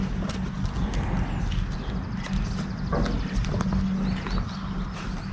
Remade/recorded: recorded